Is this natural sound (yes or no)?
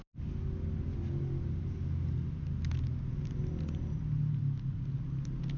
yes